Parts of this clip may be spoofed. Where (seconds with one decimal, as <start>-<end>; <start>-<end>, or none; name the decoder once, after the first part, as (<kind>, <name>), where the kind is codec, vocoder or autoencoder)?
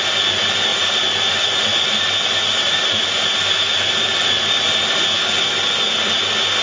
0.7-4.7 (vocoder, BigVGAN v2)